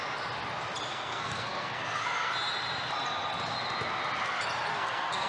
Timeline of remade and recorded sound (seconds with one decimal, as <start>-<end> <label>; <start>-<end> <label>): 0.0-0.9 recorded; 0.9-2.3 remade; 2.3-4.7 recorded; 4.7-5.3 remade

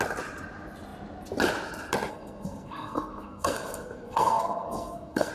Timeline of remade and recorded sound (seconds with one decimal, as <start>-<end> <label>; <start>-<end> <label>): 0.0-2.1 recorded; 2.1-5.3 remade

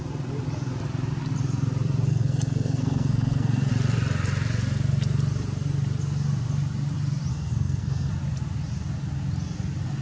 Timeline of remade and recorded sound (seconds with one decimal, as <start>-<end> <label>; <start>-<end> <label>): 0.0-2.1 recorded; 2.1-3.7 remade; 3.7-7.3 recorded; 7.3-8.1 remade; 8.1-10.0 recorded